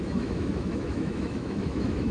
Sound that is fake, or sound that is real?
fake